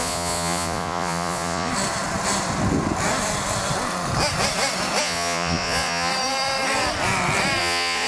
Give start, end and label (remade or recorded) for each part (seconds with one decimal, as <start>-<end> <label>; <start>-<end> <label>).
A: 0.0-1.7 remade; 1.7-5.0 recorded; 5.0-6.1 remade; 6.1-7.6 recorded; 7.6-8.1 remade